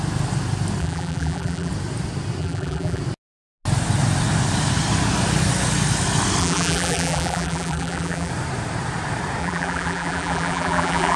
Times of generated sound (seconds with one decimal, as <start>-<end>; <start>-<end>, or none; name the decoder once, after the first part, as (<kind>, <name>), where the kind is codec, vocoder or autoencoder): 0.8-1.7 (vocoder, BigVGAN v2); 2.4-3.0; 6.4-8.3; 9.4-11.2